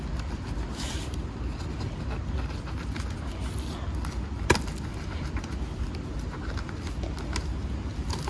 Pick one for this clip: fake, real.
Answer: real